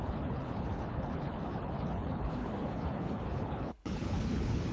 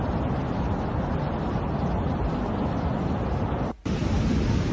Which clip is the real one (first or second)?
second